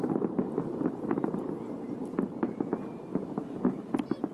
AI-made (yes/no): yes